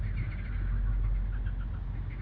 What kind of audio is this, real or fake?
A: real